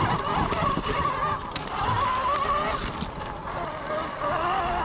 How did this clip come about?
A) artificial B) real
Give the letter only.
B